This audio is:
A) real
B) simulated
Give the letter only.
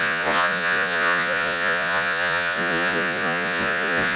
B